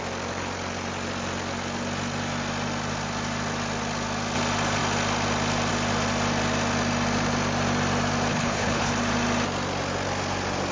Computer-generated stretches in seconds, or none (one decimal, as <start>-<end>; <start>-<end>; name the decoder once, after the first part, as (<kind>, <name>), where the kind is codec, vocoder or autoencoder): 8.3-8.9 (codec, HILCodec)

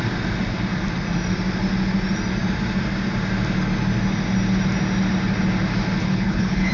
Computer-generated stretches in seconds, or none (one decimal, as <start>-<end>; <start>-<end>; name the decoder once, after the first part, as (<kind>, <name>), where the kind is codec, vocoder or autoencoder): 6.0-6.7 (codec, HILCodec)